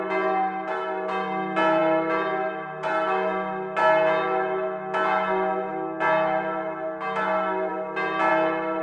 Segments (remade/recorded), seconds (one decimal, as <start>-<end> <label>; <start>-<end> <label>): 0.0-8.8 recorded